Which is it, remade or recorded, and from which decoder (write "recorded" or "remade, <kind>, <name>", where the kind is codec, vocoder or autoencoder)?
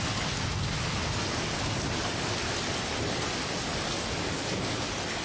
recorded